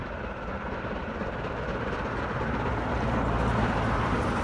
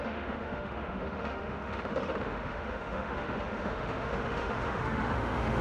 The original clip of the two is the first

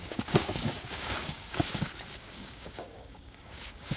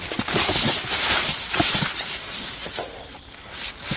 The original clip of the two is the second